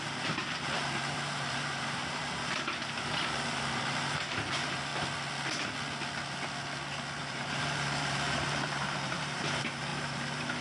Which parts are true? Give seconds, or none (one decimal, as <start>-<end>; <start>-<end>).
4.9-7.2